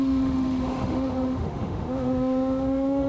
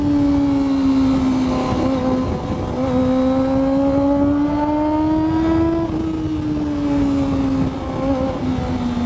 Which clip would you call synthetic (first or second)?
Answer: first